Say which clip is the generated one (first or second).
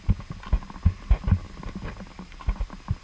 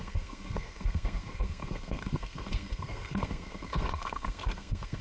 second